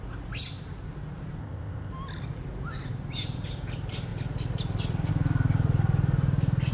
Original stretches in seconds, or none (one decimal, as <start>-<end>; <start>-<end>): 0.0-1.4; 1.9-6.7